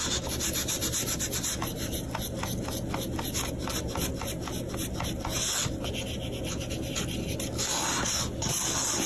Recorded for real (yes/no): yes